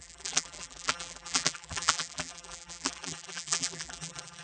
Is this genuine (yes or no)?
no